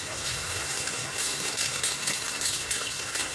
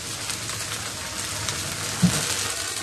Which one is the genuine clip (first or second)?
second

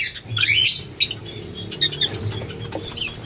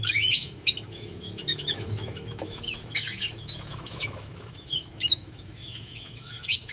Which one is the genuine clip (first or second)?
first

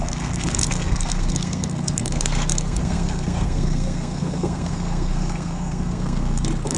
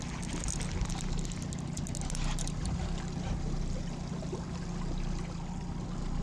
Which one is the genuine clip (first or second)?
second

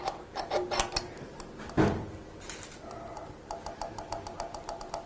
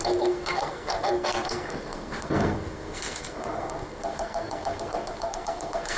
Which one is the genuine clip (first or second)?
first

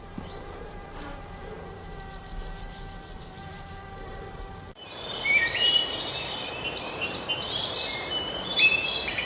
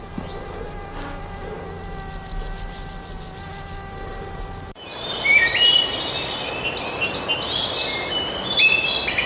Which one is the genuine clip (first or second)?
second